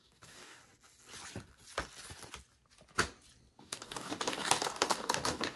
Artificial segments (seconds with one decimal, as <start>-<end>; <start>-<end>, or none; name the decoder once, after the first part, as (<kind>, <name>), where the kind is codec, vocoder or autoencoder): 0.0-0.6 (codec, DAC); 3.6-5.6